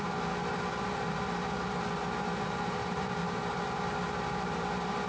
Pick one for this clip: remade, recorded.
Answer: remade